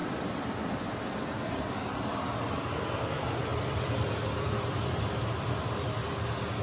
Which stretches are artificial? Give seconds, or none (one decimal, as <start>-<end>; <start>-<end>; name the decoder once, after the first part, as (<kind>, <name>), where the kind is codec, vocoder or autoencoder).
0.0-1.6 (vocoder, BigVGAN v2); 3.5-5.9

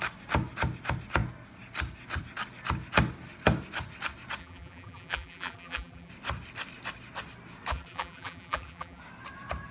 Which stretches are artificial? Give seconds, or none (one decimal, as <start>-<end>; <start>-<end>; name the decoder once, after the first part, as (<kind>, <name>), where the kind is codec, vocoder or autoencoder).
4.4-6.1 (vocoder, BigVGAN v2); 7.7-9.0

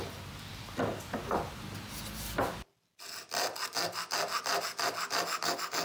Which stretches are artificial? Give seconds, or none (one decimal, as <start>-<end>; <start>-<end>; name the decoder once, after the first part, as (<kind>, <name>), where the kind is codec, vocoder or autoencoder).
none

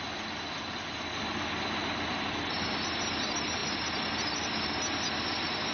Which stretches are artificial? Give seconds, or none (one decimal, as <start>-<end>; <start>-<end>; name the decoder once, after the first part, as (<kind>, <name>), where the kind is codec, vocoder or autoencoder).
none

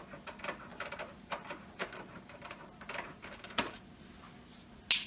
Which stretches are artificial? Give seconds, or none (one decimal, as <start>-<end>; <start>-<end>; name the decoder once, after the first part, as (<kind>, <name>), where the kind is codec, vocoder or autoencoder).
0.7-3.8 (vocoder, BigVGAN v2)

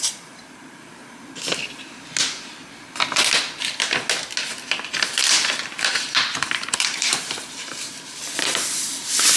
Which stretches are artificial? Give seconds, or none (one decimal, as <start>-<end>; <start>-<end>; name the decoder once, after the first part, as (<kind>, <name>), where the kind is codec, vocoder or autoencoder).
0.0-1.0 (vocoder, BigVGAN v2); 4.9-8.2

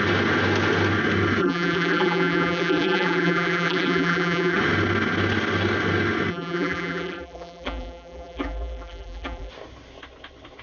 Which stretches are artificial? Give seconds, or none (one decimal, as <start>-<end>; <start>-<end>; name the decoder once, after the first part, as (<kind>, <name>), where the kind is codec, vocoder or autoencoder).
1.4-4.6 (vocoder, BigVGAN v2); 6.3-9.5